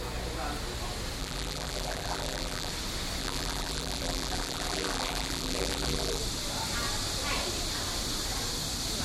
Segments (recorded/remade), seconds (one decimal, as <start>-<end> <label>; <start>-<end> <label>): 0.0-1.2 recorded; 1.2-2.7 remade; 2.7-3.2 recorded; 3.2-6.2 remade; 6.2-9.0 recorded